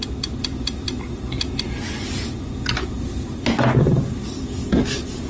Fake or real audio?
real